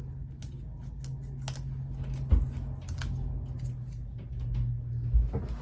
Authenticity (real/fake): real